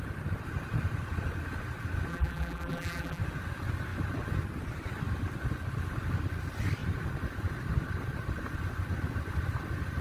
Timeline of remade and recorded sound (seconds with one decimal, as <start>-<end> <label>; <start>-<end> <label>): 0.0-2.1 recorded; 2.1-3.2 remade; 3.2-10.0 recorded